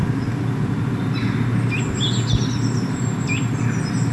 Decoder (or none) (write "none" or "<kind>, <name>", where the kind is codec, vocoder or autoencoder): none